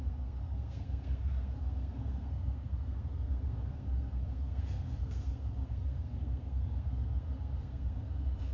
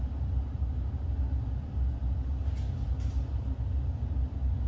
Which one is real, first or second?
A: second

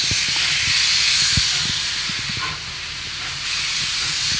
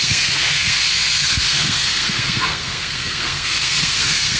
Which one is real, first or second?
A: first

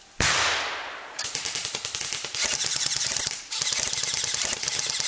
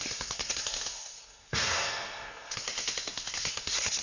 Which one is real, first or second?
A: first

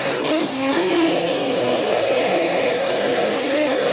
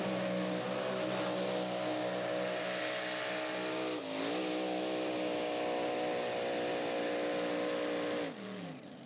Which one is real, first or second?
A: second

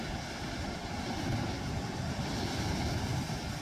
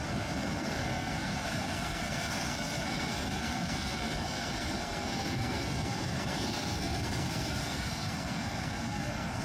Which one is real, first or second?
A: first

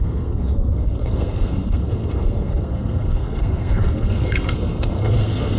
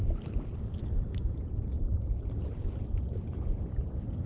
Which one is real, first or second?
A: second